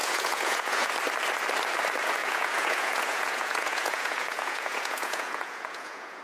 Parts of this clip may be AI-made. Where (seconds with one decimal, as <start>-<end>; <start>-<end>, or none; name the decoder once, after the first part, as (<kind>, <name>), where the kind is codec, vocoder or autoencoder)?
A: 0.0-0.9 (vocoder, Vocos); 2.2-6.2

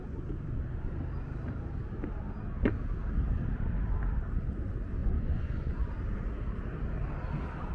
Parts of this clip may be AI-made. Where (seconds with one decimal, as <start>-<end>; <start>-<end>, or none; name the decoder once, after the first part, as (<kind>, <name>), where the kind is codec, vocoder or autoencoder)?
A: 5.0-5.9 (vocoder, Vocos)

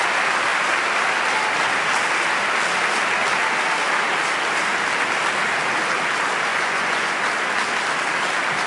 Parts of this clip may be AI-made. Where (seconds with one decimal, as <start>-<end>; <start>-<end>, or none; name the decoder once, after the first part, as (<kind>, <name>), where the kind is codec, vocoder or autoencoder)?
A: 6.5-7.2 (vocoder, Vocos)